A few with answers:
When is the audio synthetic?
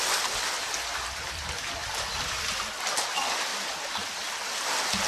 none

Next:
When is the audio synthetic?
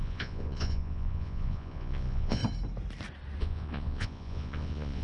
0.0-2.4 (vocoder, Vocos); 3.4-5.0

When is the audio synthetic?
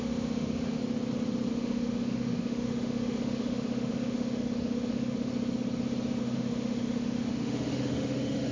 0.0-0.8 (autoencoder, DAC-VAE); 1.5-5.3; 6.2-8.5